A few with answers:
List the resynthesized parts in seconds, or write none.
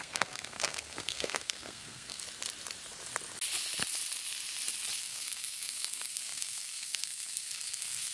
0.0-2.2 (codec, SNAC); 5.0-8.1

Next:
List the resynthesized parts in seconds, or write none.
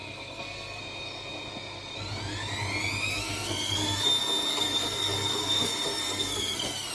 0.0-0.8 (codec, SNAC); 3.1-4.1; 4.5-6.9